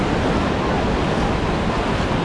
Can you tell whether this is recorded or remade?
recorded